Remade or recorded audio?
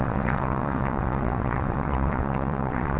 remade